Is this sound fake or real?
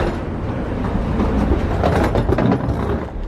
real